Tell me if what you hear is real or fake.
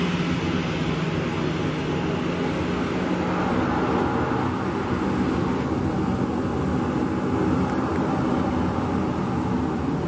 real